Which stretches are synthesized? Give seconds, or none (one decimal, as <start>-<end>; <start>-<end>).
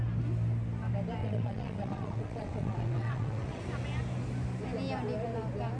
1.2-3.6